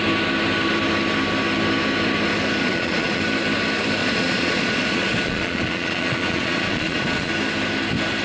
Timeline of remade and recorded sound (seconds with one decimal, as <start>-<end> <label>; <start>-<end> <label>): 0.0-2.6 recorded; 2.6-3.2 remade; 3.2-4.0 recorded; 4.0-7.3 remade; 7.3-8.2 recorded